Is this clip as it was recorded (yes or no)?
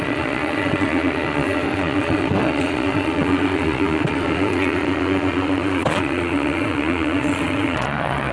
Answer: no